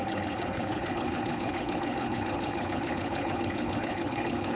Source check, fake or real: fake